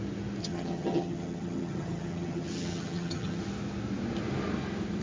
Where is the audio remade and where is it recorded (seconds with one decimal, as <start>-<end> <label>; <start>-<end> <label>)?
0.0-0.4 recorded; 0.4-3.4 remade; 3.4-5.0 recorded